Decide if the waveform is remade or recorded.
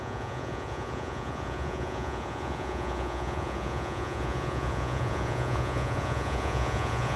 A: remade